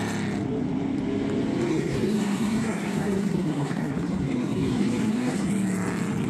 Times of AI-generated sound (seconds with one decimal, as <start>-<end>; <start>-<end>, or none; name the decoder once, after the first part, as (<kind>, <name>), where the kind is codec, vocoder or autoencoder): 1.7-5.5 (codec, SNAC)